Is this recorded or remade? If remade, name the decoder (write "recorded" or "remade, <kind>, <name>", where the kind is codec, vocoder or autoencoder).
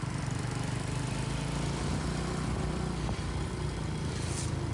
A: recorded